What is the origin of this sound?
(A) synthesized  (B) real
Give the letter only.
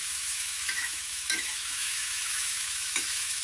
A